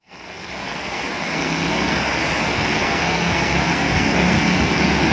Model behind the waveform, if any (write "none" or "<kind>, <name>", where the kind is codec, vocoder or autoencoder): codec, SNAC